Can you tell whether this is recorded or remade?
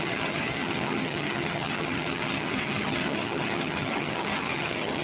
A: remade